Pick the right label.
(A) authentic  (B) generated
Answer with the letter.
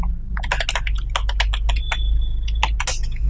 A